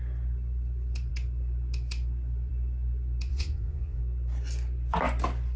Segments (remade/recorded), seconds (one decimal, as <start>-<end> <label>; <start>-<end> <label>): 0.0-3.3 recorded; 3.3-4.0 remade; 4.0-5.6 recorded